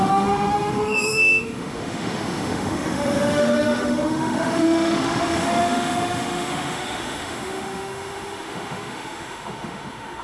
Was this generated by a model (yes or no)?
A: yes